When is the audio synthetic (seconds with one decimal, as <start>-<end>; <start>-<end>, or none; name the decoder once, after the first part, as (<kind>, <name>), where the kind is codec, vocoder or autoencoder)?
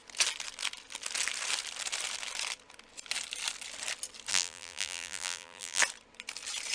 4.3-5.8 (vocoder, BigVGAN v2)